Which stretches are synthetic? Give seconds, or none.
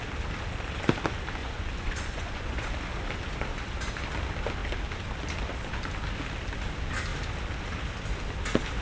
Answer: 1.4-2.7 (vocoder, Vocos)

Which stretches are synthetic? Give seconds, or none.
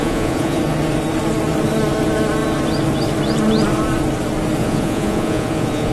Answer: 0.0-0.6 (vocoder, Vocos); 4.6-5.9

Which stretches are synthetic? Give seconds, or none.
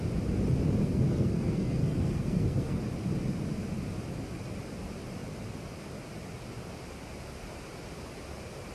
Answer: 0.8-2.8 (codec, SNAC)